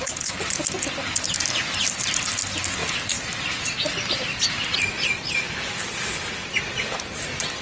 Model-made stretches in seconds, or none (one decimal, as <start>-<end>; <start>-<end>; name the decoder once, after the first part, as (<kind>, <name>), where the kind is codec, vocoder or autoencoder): none

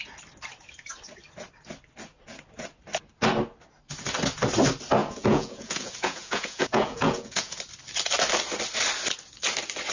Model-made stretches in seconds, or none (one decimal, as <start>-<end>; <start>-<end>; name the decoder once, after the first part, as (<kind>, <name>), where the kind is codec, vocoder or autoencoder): 5.0-7.6 (vocoder, Vocos)